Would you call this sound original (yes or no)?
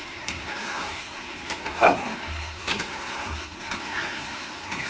no